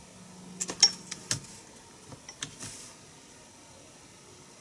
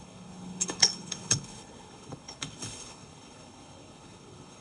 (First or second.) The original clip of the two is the first